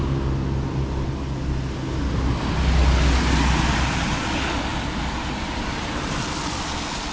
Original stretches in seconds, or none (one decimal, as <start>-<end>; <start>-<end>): 0.0-7.1